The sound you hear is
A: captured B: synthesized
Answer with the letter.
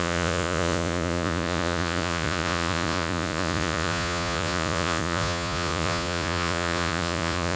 B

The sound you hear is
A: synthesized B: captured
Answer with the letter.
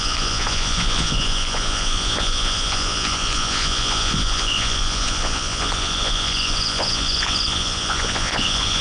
A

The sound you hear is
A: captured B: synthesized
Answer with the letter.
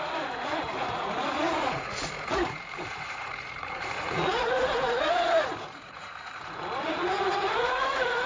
B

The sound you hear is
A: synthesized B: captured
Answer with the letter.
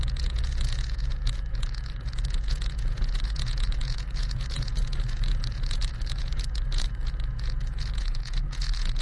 A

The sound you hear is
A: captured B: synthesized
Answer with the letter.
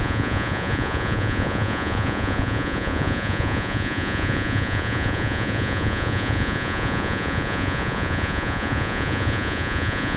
B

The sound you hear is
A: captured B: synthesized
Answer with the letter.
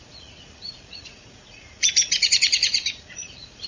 B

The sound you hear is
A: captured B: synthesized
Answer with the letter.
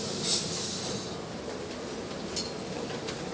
A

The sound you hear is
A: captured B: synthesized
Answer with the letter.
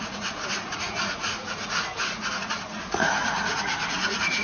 B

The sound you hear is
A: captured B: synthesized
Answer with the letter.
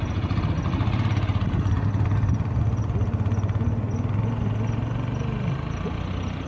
A